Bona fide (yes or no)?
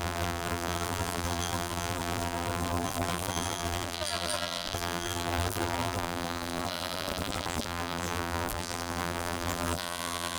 no